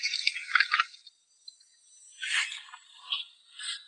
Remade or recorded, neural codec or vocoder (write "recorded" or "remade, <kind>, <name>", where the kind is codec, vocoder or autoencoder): recorded